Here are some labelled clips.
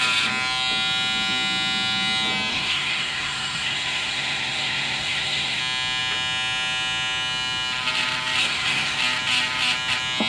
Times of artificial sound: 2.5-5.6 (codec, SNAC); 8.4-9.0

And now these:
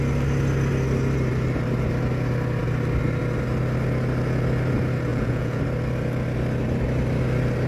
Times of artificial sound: 5.1-5.6 (vocoder, Vocos)

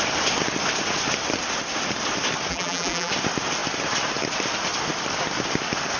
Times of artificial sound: 2.5-3.1 (vocoder, BigVGAN v2)